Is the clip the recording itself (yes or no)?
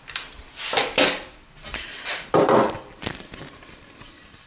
yes